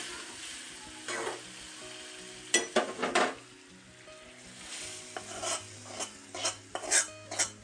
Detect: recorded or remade recorded